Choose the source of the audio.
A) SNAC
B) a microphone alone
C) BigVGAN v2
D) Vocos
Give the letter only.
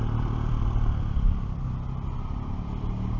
C